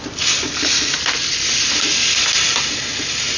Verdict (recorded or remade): recorded